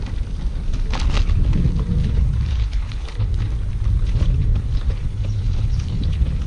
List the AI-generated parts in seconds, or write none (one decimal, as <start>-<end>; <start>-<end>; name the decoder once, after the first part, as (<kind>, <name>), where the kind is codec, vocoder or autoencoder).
2.0-3.4 (codec, HILCodec); 4.0-6.5